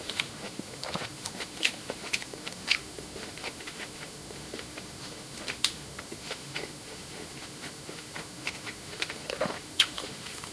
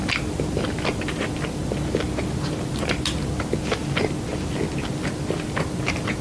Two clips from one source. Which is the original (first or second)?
second